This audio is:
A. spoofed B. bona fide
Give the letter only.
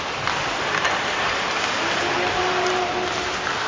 B